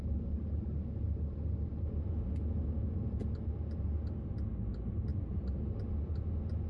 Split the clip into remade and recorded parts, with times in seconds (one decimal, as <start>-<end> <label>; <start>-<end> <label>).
0.0-6.7 recorded